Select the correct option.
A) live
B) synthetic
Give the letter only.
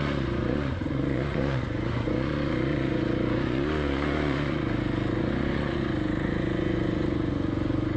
B